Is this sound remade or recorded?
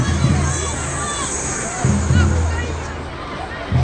recorded